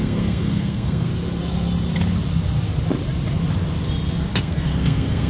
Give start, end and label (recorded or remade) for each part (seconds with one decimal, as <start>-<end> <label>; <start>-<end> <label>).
0.0-1.1 remade; 1.1-4.3 recorded; 4.3-5.3 remade

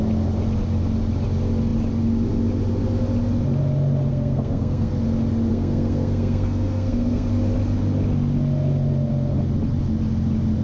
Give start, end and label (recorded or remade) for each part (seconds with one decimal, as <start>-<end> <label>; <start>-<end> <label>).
0.0-4.1 recorded; 4.1-4.9 remade; 4.9-5.5 recorded; 5.5-7.3 remade; 7.3-10.6 recorded

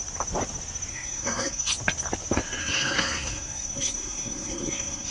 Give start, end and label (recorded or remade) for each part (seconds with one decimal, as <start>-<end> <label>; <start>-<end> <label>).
0.0-0.9 recorded; 0.9-1.7 remade; 1.7-2.6 recorded; 2.6-5.1 remade

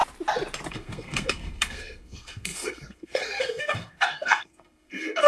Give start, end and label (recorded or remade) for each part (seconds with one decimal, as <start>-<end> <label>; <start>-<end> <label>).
0.0-0.7 recorded; 0.7-5.3 remade

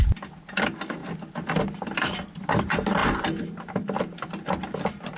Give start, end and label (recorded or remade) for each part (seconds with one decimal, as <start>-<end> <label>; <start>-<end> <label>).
0.0-5.2 recorded

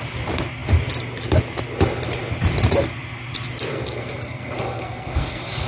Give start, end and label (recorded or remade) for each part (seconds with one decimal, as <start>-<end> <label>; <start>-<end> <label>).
0.0-3.7 recorded; 3.7-5.7 remade

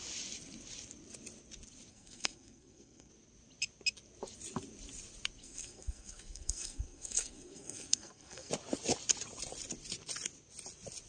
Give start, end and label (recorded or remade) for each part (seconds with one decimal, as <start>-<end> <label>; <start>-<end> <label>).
0.0-1.9 recorded; 1.9-3.1 remade; 3.1-5.4 recorded; 5.4-8.5 remade; 8.5-11.1 recorded

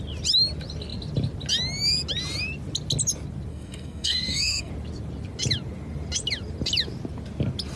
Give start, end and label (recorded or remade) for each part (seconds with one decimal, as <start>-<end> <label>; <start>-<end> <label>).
0.0-3.5 recorded; 3.5-4.7 remade; 4.7-7.8 recorded